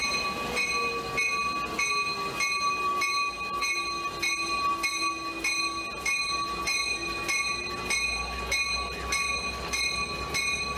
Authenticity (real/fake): real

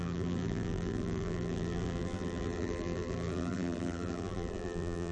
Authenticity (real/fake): fake